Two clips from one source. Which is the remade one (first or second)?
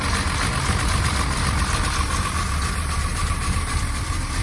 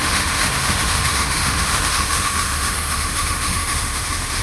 second